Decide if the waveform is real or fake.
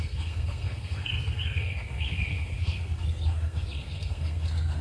fake